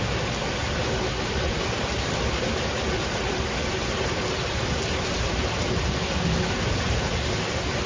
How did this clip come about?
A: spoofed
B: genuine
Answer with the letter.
B